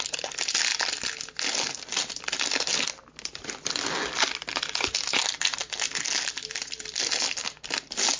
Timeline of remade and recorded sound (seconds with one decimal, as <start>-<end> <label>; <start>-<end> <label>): 0.0-8.2 recorded